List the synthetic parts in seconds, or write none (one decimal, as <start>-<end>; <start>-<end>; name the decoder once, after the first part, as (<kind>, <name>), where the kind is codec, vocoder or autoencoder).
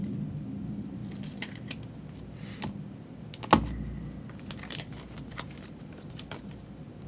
0.6-1.0 (vocoder, BigVGAN v2); 5.3-7.1